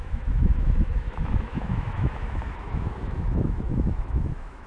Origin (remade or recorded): remade